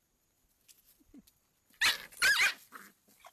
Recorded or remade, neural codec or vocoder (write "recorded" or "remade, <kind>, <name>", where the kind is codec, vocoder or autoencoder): recorded